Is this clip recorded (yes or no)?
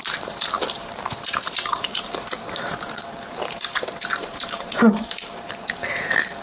no